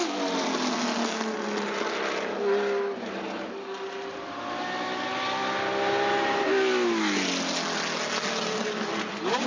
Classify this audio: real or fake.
real